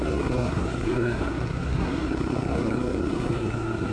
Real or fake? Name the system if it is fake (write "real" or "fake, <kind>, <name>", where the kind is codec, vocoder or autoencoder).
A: fake, codec, SNAC